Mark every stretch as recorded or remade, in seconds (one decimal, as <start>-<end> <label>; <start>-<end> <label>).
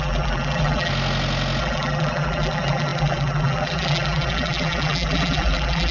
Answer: 0.0-0.9 remade; 0.9-1.6 recorded; 1.6-5.9 remade